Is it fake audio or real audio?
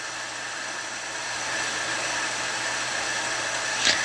real